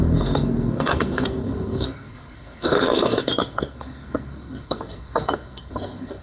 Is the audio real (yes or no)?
no